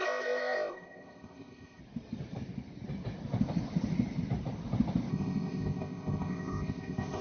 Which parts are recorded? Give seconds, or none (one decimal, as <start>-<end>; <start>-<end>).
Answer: 1.8-5.1